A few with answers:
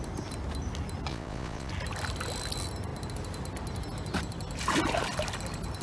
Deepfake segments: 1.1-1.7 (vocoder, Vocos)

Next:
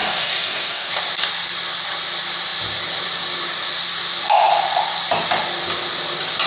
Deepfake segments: 0.0-0.9 (codec, DAC)